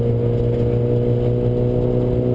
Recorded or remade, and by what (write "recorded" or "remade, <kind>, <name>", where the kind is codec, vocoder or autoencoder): recorded